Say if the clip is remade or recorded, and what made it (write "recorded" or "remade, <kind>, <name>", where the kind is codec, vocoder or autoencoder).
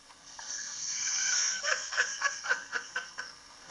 remade, codec, SNAC